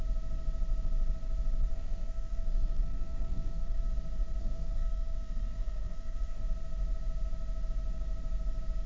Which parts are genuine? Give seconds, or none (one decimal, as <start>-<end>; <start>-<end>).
0.0-1.7; 3.9-4.4; 6.4-8.9